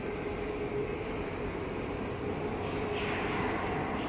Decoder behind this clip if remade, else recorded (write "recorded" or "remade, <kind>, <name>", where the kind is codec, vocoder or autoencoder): recorded